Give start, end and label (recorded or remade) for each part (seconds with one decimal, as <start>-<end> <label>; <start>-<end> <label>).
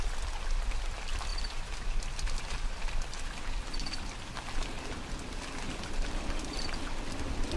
0.0-7.6 recorded